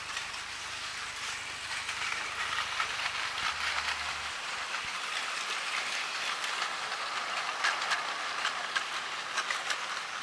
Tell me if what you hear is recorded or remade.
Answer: remade